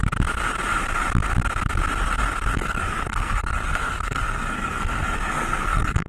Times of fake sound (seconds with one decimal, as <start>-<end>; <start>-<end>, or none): 2.5-6.1

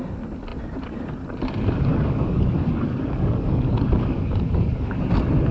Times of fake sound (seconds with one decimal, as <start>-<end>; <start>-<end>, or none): 1.9-5.0

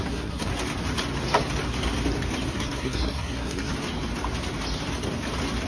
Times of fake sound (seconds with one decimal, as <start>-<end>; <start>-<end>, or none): 0.0-0.5; 2.5-3.7

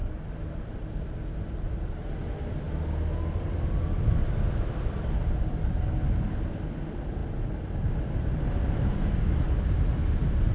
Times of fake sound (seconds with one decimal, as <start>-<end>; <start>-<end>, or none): none

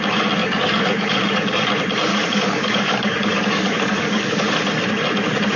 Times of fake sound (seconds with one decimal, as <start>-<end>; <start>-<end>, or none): 0.4-1.7; 2.1-4.7

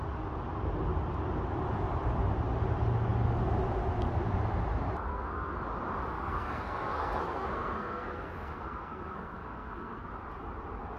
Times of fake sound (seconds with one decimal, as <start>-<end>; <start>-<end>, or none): 5.1-5.6; 6.1-10.1